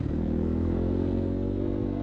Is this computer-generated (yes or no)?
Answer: yes